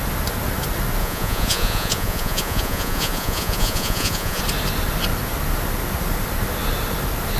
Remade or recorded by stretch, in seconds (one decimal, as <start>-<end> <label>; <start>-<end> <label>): 0.0-1.0 recorded; 1.0-4.4 remade; 4.4-7.4 recorded